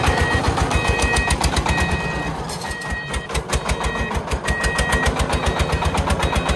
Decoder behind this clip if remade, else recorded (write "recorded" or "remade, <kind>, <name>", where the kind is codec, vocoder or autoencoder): recorded